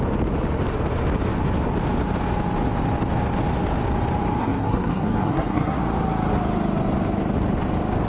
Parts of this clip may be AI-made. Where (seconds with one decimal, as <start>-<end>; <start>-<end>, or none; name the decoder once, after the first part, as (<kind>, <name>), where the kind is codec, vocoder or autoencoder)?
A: 4.4-5.8 (codec, SNAC)